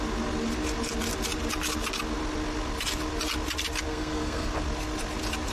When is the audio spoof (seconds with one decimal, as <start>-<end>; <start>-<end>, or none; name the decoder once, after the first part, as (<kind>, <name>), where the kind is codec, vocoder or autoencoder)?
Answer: 3.9-4.5 (codec, SNAC)